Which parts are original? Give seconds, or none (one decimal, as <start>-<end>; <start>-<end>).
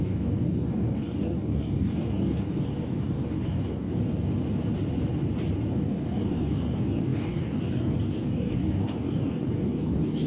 3.9-5.7